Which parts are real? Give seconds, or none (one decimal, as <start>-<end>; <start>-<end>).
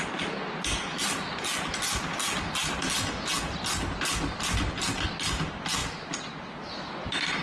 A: 0.0-7.4